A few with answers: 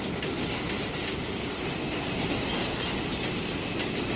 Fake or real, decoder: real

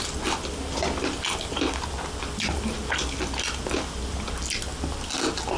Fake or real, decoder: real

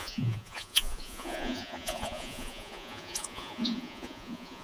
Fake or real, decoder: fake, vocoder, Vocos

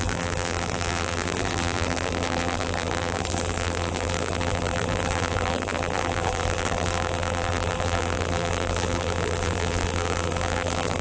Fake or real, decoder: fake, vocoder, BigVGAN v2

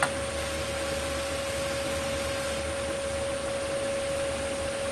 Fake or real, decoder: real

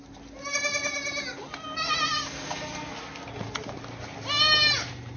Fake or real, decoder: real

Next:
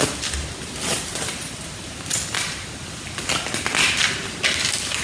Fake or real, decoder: fake, vocoder, BigVGAN v2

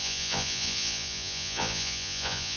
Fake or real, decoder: fake, vocoder, Vocos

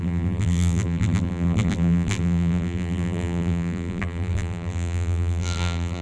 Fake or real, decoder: fake, vocoder, BigVGAN v2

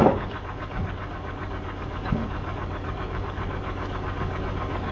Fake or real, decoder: fake, codec, DAC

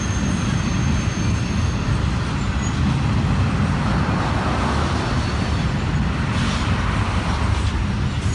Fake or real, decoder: real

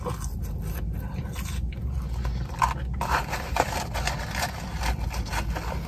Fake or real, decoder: real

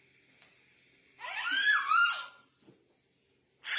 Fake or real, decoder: fake, vocoder, BigVGAN v2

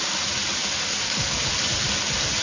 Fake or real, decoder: real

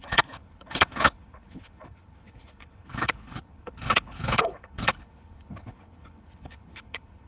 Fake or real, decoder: fake, codec, HILCodec